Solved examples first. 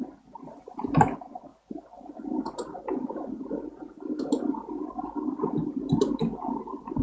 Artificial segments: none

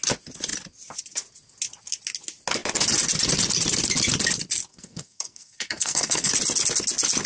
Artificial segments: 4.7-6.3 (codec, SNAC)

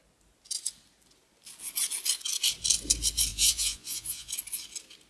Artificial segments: 3.3-4.3 (vocoder, Vocos)